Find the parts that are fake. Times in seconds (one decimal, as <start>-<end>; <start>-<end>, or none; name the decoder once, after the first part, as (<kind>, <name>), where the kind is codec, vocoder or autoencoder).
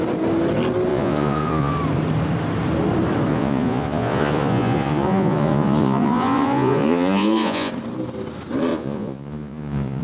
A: 0.9-1.7 (vocoder, Vocos); 3.3-7.7; 8.7-10.0